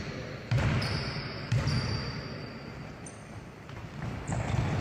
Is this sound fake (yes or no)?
yes